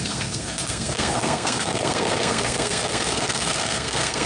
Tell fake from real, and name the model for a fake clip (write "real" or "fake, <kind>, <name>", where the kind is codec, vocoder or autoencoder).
fake, codec, SNAC